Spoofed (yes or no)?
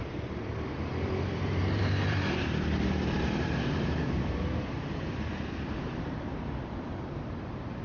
yes